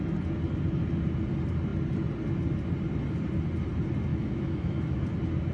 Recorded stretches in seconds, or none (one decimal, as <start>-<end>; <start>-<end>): 0.0-4.1; 5.0-5.5